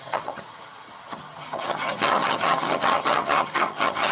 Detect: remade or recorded remade